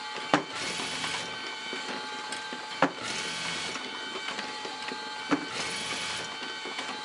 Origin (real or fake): real